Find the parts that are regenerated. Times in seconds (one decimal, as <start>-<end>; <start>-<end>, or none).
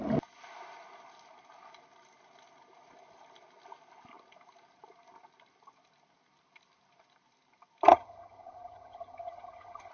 7.9-9.9